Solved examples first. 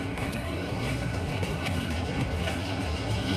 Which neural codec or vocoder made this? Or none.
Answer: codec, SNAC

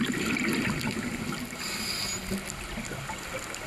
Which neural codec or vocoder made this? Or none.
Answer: none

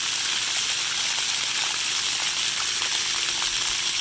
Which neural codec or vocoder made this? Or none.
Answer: none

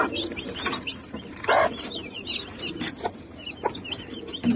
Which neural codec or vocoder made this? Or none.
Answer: vocoder, BigVGAN v2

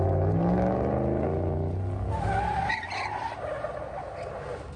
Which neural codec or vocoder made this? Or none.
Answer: none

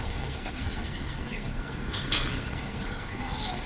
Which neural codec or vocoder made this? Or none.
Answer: codec, SNAC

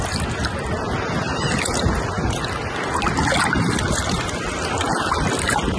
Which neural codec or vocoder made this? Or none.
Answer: none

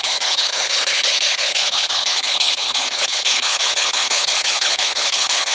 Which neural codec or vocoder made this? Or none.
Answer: codec, HILCodec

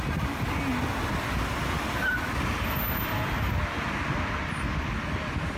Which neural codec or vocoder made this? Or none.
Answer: none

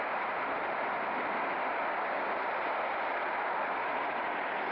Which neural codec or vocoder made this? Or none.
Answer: none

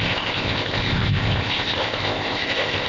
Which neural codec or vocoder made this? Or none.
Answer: codec, ZipCodec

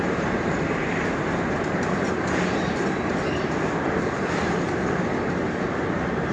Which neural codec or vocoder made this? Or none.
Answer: vocoder, BigVGAN v2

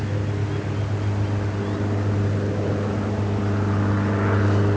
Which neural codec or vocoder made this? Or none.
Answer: none